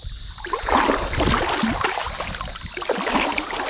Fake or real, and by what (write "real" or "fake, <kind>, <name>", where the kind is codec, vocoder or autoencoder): real